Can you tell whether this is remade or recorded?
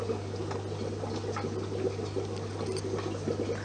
recorded